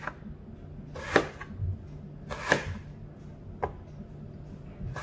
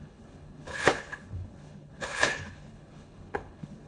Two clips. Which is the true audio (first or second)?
first